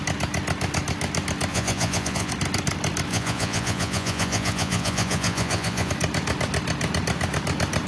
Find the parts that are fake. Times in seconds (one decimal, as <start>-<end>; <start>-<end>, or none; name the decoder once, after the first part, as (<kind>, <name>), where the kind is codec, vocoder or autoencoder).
1.5-2.3 (vocoder, Vocos); 3.1-5.9